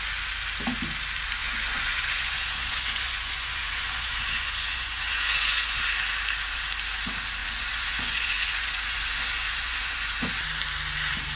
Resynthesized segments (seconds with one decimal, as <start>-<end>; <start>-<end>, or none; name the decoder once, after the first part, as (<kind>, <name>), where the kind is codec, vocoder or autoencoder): 1.4-5.8 (vocoder, Vocos); 7.4-10.3